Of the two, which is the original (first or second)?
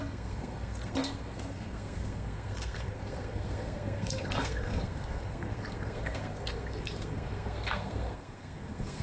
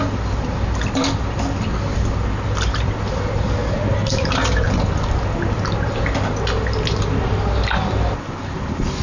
second